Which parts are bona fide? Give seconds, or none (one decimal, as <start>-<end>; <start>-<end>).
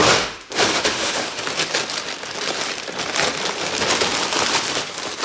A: 1.4-5.2